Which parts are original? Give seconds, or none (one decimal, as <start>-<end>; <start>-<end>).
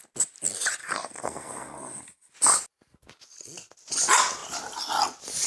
0.0-0.8; 2.0-5.5